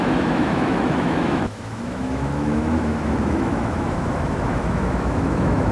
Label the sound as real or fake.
fake